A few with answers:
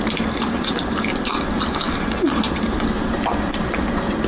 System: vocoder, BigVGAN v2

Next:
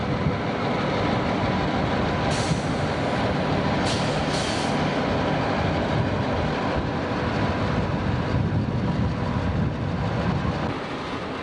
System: none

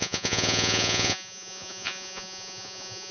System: vocoder, Vocos